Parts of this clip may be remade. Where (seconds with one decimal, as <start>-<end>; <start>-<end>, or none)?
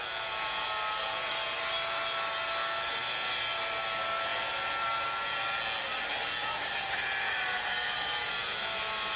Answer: none